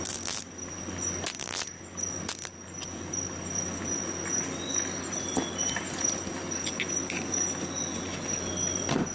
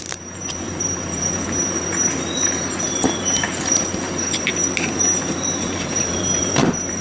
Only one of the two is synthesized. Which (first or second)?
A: second